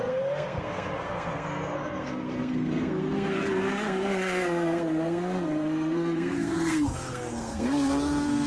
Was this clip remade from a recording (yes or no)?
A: yes